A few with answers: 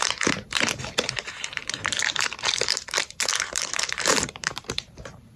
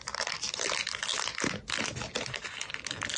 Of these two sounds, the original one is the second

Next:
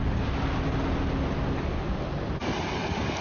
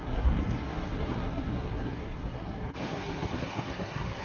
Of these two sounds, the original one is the first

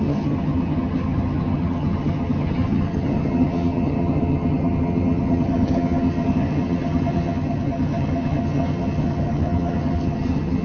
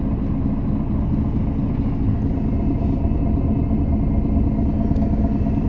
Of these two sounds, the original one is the second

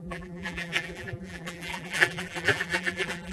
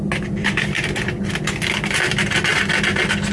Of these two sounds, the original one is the second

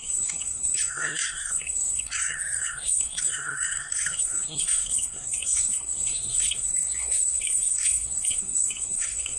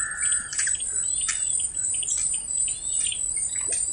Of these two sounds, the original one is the second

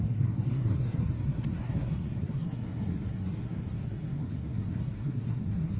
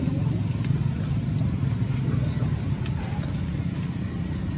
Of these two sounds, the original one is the second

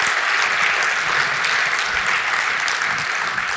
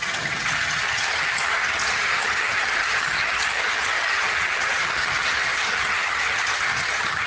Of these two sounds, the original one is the first